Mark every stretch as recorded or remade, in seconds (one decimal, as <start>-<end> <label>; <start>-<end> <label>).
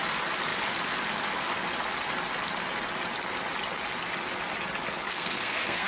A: 0.0-5.1 recorded; 5.1-5.9 remade